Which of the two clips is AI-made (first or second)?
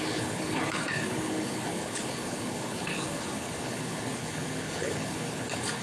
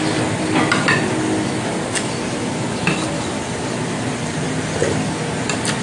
first